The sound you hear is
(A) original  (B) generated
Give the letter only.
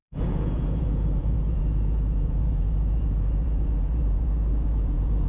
B